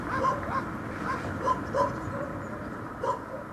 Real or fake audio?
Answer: fake